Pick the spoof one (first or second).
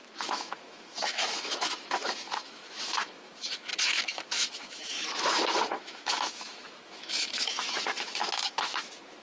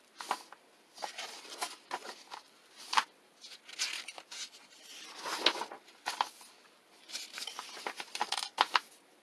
first